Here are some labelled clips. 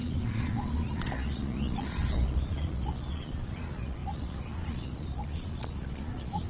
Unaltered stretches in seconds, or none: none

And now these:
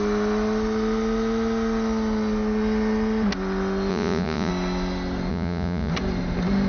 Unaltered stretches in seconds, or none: 0.0-3.9; 4.5-5.3; 5.9-6.7